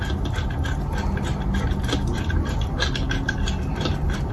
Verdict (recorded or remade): recorded